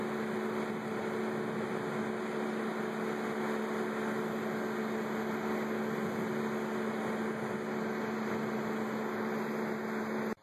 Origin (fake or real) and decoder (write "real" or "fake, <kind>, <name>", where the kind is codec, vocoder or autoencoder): real